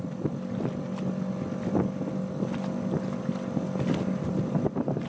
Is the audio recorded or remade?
recorded